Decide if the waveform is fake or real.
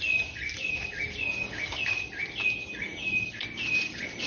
real